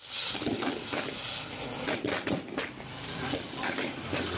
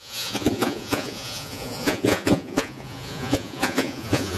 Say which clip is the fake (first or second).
second